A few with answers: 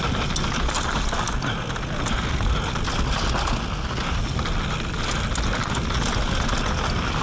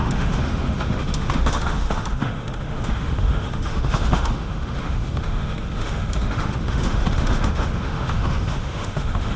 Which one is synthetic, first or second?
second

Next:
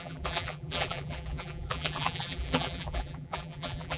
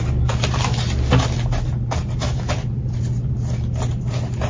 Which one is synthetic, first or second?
first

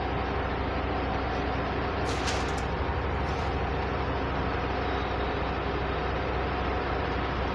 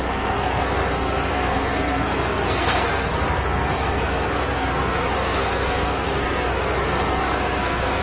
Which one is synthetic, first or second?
second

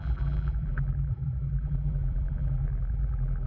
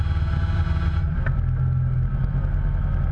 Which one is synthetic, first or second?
first